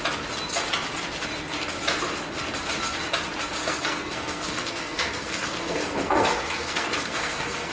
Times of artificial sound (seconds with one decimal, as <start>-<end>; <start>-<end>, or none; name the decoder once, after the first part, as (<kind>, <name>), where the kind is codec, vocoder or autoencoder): 3.6-7.7 (codec, SNAC)